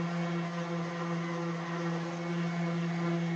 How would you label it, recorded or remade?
recorded